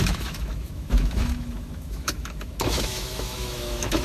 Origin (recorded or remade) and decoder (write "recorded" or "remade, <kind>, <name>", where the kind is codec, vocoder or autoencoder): remade, autoencoder, DAC-VAE